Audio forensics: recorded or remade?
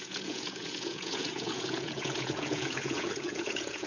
remade